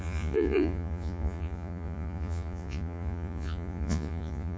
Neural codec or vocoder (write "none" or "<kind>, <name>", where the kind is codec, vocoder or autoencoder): vocoder, Vocos